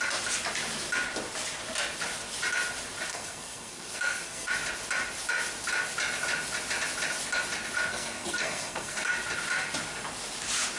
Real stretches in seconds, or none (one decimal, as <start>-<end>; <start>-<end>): 0.0-3.1; 4.5-7.9; 9.1-10.8